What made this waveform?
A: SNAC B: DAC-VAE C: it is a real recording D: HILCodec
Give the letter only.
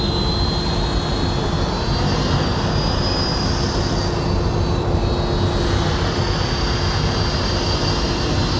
C